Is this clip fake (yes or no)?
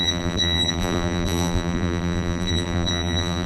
yes